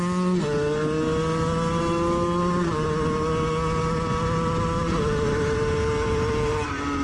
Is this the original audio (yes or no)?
yes